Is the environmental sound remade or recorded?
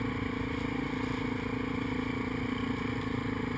recorded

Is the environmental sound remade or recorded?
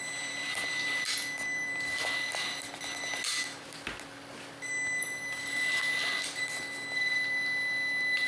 recorded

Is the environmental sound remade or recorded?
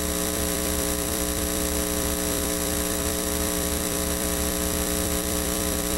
remade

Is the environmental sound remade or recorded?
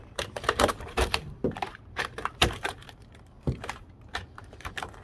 remade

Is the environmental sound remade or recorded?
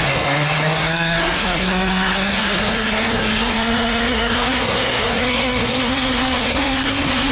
remade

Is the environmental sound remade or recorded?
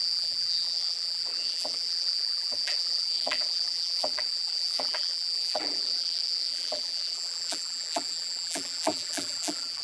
remade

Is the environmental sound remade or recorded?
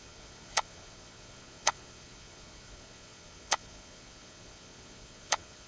remade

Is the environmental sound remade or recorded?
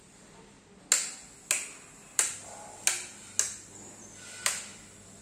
recorded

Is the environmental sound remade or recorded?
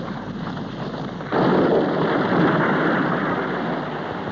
recorded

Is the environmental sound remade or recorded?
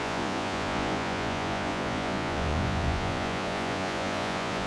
remade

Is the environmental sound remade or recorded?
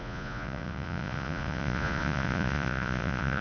remade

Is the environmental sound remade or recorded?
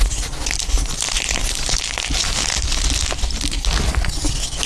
recorded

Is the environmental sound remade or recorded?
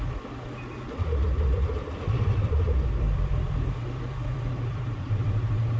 remade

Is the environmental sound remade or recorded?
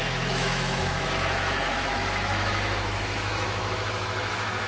remade